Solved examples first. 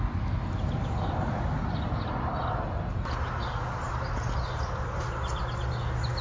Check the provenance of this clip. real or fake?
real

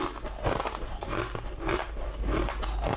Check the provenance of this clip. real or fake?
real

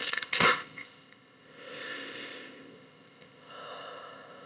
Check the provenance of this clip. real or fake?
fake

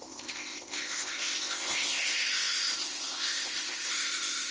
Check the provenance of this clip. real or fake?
fake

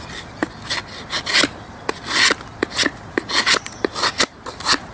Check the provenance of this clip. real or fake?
real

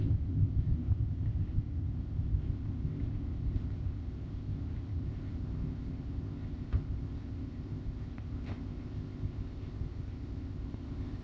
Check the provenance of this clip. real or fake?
fake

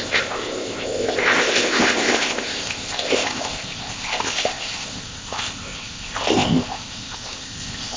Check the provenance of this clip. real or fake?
fake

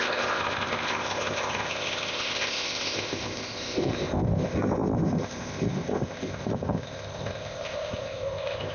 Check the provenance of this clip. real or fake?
fake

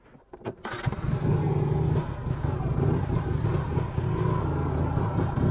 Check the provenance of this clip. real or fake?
real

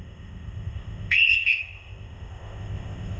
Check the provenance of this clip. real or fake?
fake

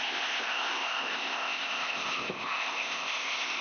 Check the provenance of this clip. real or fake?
fake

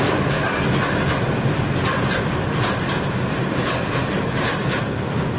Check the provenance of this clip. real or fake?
real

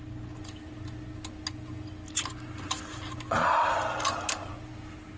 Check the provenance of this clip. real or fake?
real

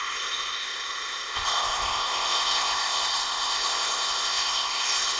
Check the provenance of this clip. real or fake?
fake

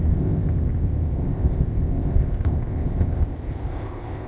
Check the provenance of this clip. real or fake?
fake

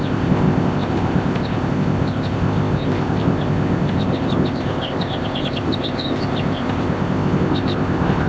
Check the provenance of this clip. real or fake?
fake